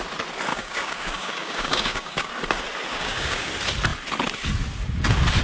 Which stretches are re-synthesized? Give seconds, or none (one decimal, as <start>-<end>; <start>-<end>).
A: 0.5-2.3; 2.9-3.5

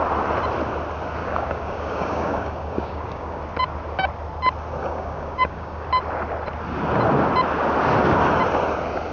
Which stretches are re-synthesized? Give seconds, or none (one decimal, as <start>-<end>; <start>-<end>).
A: 1.2-3.4; 4.8-5.9

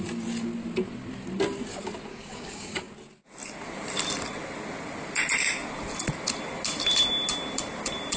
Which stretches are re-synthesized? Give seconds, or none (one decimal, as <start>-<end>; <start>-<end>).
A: 2.1-2.9

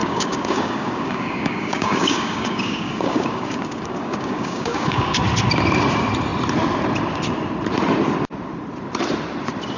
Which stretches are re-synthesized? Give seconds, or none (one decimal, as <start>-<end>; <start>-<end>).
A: 0.0-5.2

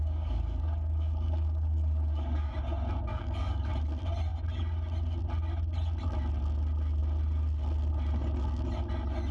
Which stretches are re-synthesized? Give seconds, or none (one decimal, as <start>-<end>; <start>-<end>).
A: 0.0-2.5; 3.1-3.7

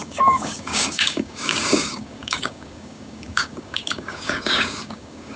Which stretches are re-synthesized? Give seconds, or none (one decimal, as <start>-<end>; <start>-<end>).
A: 0.0-5.4

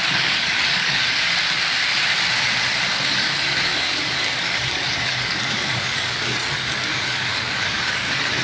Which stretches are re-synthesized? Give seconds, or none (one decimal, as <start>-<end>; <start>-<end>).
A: 0.0-1.0; 3.0-8.4